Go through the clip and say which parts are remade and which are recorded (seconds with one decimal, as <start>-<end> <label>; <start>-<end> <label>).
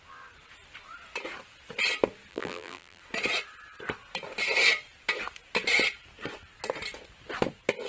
0.0-2.3 recorded; 2.3-3.0 remade; 3.0-7.9 recorded